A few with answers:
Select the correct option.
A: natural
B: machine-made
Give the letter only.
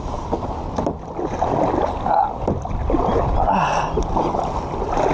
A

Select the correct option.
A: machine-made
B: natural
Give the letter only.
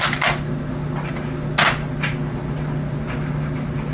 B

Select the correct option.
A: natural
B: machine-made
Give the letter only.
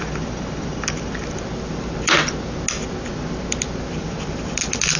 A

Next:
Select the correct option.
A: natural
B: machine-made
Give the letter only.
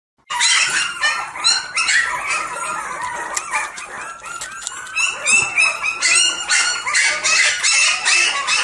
A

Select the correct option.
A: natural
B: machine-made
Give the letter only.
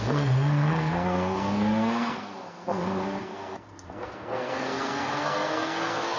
B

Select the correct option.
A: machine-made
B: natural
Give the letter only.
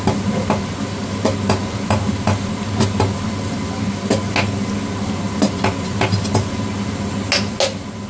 B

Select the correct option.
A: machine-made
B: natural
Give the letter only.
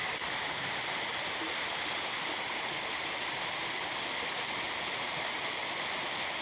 B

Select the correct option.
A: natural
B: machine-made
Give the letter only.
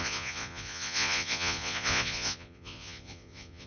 B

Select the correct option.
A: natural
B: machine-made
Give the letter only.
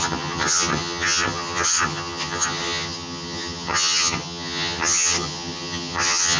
B